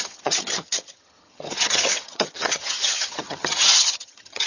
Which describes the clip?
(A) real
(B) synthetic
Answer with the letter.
B